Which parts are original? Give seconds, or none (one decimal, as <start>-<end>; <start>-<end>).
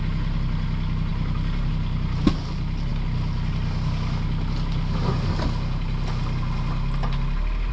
0.0-7.7